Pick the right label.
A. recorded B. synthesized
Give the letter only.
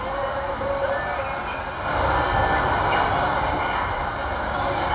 A